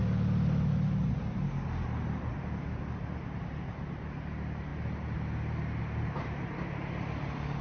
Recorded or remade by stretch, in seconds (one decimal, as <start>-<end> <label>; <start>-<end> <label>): 0.0-7.6 recorded

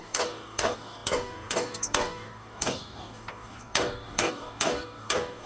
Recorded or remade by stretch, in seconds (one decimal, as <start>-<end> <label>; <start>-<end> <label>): 0.0-5.5 remade

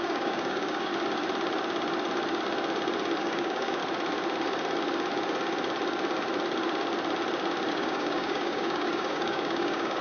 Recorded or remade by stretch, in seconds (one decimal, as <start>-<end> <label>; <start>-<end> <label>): 0.0-0.9 remade; 0.9-3.2 recorded; 3.2-3.8 remade; 3.8-7.7 recorded; 7.7-10.0 remade

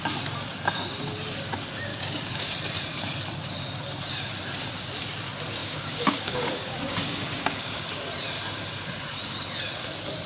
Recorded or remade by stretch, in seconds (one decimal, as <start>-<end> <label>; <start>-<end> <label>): 0.0-1.9 recorded; 1.9-2.5 remade; 2.5-5.6 recorded; 5.6-7.9 remade; 7.9-10.3 recorded

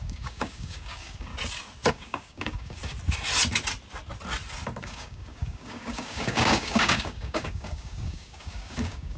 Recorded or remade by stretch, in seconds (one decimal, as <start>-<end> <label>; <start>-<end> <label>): 0.0-1.3 remade; 1.3-1.9 recorded; 1.9-2.8 remade; 2.8-4.8 recorded; 4.8-9.2 remade

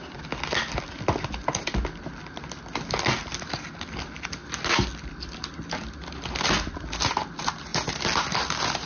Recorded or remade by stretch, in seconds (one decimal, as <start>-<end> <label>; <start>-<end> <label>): 0.0-8.9 recorded